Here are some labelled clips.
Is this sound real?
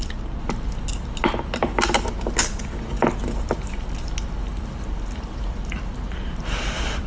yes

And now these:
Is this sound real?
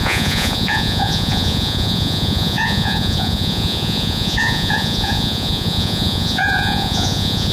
no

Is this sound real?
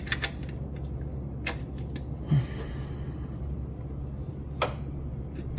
yes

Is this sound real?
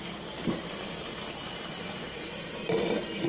no